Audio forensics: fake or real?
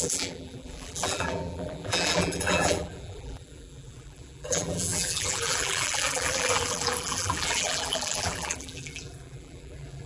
fake